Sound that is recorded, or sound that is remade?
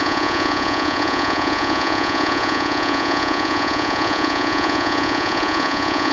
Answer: remade